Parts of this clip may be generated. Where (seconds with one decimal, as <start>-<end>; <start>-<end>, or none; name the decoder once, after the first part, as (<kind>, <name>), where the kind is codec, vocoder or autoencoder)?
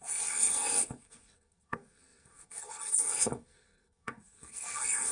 0.0-5.1 (codec, SNAC)